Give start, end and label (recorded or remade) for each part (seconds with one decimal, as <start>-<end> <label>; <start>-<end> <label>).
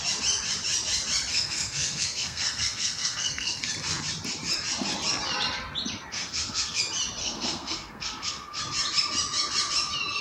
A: 0.0-1.3 recorded; 1.3-3.6 remade; 3.6-6.1 recorded; 6.1-6.8 remade; 6.8-7.2 recorded; 7.2-8.6 remade; 8.6-10.2 recorded